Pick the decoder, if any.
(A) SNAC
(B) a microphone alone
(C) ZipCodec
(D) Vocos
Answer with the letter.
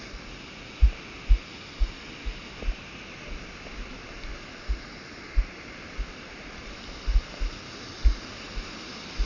B